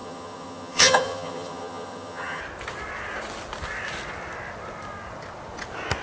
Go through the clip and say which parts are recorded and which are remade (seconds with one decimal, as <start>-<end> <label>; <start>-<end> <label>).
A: 0.0-2.4 remade; 2.4-6.0 recorded